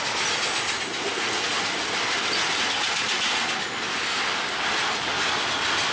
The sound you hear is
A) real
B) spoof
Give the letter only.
A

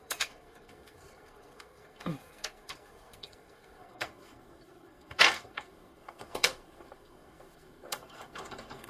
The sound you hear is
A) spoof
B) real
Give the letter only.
A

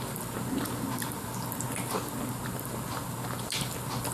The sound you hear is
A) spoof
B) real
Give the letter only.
B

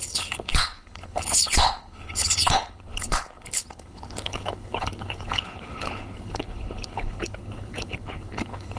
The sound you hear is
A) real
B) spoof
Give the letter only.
B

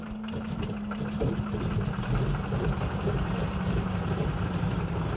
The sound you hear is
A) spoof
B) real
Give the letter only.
A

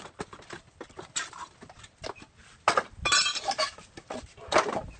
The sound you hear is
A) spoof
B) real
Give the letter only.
B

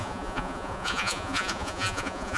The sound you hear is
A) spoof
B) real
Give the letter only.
A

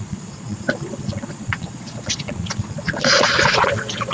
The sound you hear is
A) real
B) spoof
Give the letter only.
B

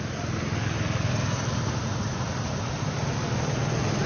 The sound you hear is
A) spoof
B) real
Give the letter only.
B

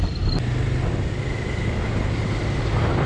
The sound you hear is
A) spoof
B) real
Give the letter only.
B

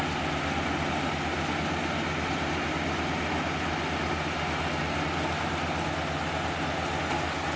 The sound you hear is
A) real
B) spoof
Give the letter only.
A